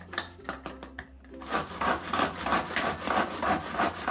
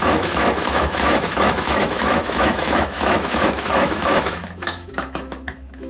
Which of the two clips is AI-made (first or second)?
second